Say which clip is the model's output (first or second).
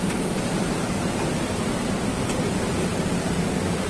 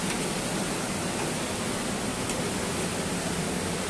first